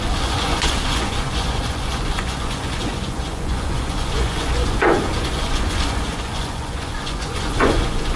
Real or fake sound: fake